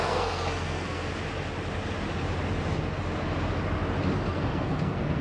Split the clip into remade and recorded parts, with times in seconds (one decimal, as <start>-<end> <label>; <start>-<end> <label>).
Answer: 0.0-1.1 remade; 1.1-4.2 recorded; 4.2-5.2 remade

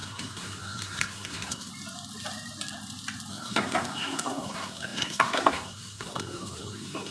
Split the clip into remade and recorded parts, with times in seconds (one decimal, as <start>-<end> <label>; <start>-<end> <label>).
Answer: 0.0-1.7 remade; 1.7-3.3 recorded; 3.3-7.1 remade

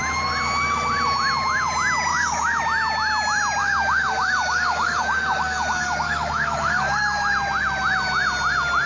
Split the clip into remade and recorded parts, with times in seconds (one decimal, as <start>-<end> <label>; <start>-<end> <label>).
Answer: 0.0-2.1 recorded; 2.1-2.6 remade; 2.6-3.6 recorded; 3.6-7.3 remade; 7.3-8.9 recorded

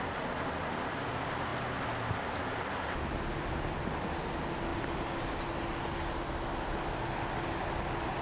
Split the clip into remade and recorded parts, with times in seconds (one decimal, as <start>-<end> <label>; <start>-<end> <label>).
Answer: 0.0-8.2 recorded

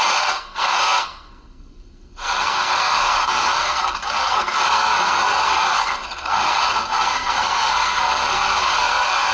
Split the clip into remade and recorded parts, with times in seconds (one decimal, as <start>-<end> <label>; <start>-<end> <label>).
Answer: 0.0-9.3 remade

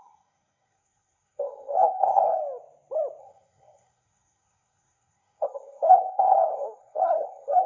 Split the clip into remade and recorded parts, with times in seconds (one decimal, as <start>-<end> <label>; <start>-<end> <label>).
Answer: 0.0-2.4 remade; 2.4-3.2 recorded; 3.2-7.7 remade

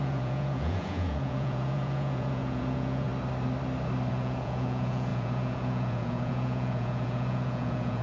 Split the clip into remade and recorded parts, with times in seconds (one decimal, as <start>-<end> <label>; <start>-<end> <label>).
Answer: 0.0-3.1 remade; 3.1-4.1 recorded; 4.1-8.0 remade